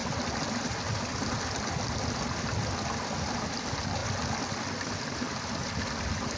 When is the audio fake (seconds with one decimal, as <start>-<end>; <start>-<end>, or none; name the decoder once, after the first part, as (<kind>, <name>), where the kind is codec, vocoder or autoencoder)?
none